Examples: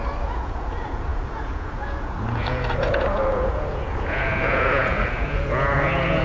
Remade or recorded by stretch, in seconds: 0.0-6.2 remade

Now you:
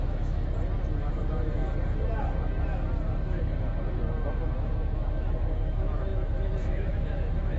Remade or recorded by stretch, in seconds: 0.0-0.4 remade; 0.4-1.1 recorded; 1.1-1.6 remade; 1.6-4.3 recorded; 4.3-7.6 remade

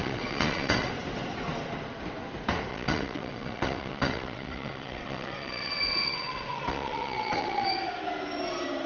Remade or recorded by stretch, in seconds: 0.0-0.9 remade; 0.9-2.7 recorded; 2.7-7.7 remade; 7.7-8.9 recorded